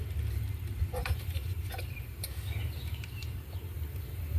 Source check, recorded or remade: remade